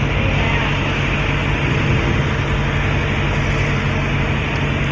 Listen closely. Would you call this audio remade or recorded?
recorded